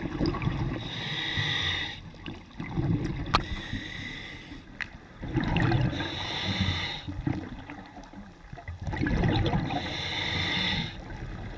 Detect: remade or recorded recorded